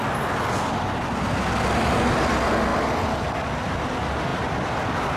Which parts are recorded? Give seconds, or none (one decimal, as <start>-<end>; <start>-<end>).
0.0-5.2